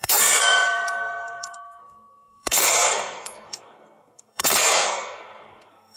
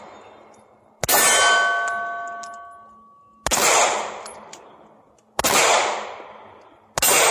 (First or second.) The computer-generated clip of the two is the first